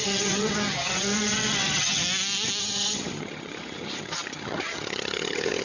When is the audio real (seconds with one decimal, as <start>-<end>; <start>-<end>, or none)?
2.0-2.6